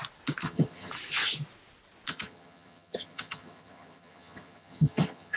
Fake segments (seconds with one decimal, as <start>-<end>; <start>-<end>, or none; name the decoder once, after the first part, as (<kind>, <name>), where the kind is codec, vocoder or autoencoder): 0.4-0.9 (vocoder, HiFi-GAN); 2.1-5.4